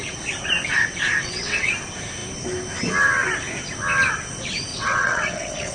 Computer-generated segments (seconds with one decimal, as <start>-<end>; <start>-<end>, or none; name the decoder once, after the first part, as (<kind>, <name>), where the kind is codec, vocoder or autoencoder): 1.2-1.7 (vocoder, WaveNeXt); 4.7-5.7